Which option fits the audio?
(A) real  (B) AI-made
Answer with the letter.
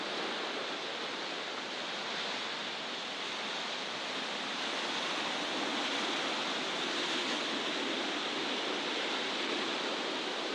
A